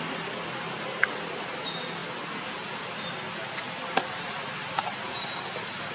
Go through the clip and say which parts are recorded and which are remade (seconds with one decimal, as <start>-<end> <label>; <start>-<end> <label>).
0.0-5.9 recorded